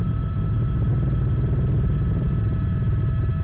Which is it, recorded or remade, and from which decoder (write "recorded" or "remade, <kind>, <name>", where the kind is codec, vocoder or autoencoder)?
remade, vocoder, BigVGAN v2